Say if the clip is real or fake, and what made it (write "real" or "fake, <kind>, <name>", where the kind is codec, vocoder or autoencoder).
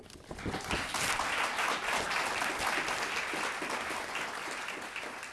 real